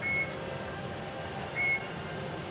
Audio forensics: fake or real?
real